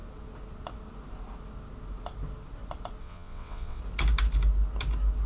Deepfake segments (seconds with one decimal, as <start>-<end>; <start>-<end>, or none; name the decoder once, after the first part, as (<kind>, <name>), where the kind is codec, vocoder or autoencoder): 3.0-3.8 (vocoder, WaveNeXt)